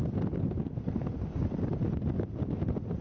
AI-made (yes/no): no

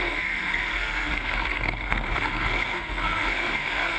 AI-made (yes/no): yes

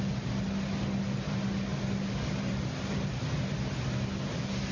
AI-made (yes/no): no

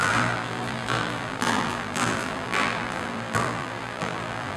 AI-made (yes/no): yes